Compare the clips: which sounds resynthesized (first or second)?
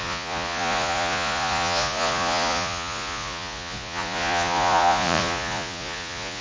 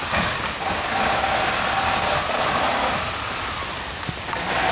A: first